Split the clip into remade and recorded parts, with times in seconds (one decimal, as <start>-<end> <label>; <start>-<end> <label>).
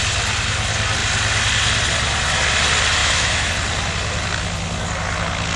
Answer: 0.0-3.0 recorded; 3.0-3.5 remade; 3.5-5.6 recorded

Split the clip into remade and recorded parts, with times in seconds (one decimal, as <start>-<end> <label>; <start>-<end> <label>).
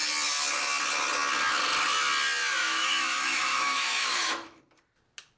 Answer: 0.0-2.6 recorded; 2.6-4.6 remade; 4.6-5.4 recorded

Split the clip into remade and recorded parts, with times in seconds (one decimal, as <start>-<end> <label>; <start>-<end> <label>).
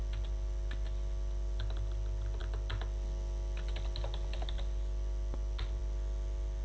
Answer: 0.0-6.6 recorded